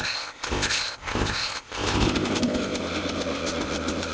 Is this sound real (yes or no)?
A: no